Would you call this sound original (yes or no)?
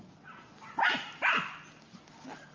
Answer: yes